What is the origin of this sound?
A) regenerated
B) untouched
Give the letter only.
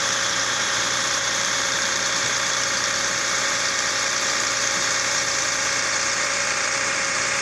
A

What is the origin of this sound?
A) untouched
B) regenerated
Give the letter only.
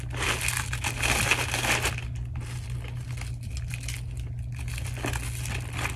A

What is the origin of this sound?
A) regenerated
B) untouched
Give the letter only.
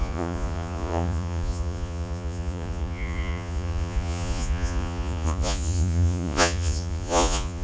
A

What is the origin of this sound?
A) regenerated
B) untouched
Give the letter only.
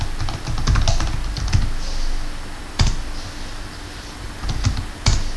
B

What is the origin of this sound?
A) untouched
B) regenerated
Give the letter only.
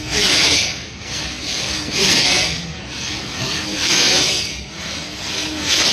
B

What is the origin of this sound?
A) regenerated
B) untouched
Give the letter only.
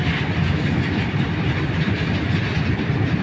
B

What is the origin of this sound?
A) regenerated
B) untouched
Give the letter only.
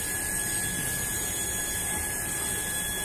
B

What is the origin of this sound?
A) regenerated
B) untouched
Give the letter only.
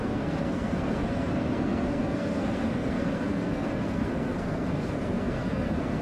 A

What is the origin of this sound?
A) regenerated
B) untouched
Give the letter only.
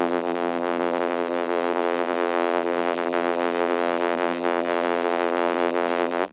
A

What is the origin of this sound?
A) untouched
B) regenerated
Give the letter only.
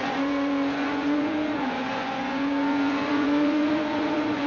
B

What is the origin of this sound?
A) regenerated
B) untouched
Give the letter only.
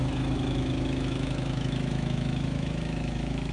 A